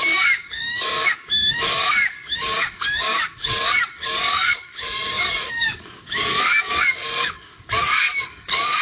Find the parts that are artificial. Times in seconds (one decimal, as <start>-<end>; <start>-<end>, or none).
0.0-8.8